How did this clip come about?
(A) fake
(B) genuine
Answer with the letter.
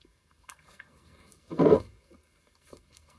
A